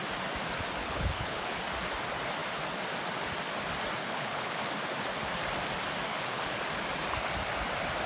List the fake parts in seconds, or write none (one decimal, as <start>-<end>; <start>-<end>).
0.8-1.6; 4.0-4.7; 6.1-6.6